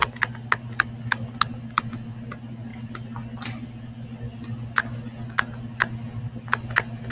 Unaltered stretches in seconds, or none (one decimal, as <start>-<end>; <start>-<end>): 0.0-7.1